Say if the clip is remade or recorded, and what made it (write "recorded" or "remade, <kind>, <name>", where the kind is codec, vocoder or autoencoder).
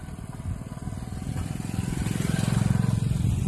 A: recorded